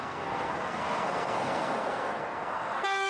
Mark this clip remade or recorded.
remade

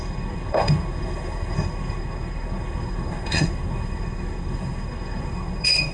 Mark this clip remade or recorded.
remade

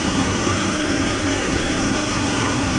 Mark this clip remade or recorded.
remade